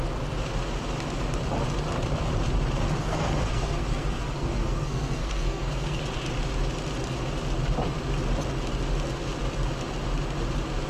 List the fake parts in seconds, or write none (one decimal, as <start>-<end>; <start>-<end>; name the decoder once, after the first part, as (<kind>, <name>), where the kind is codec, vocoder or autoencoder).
3.0-6.0 (codec, SNAC)

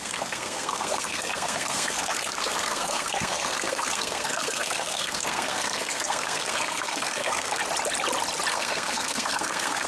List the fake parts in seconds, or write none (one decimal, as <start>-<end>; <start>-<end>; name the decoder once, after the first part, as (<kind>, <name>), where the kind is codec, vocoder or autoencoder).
0.0-7.6 (codec, SNAC); 8.5-9.9